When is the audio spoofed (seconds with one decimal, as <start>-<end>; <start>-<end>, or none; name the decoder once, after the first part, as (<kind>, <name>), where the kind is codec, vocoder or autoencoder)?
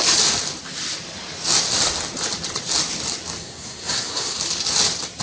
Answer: 3.4-4.4 (codec, SNAC)